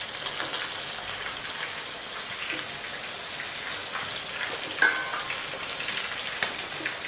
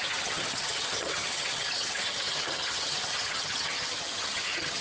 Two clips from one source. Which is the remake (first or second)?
second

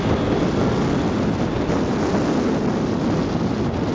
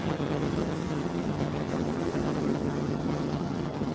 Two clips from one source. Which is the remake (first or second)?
second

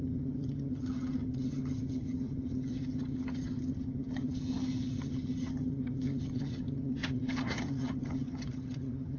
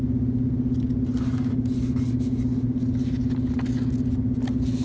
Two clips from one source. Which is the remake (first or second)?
first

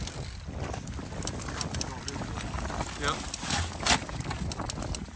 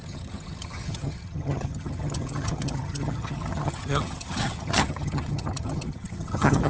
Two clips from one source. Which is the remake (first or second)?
second